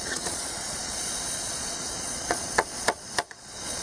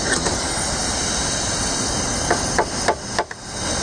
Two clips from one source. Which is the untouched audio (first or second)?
second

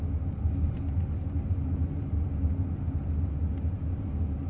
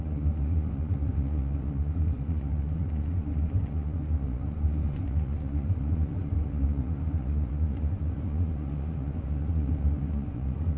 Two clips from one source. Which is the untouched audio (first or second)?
first